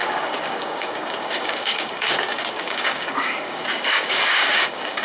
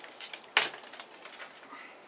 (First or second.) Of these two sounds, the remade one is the first